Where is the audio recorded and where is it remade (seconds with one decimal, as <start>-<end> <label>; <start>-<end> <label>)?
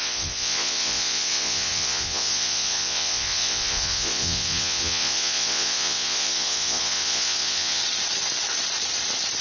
0.0-7.8 remade; 7.8-9.4 recorded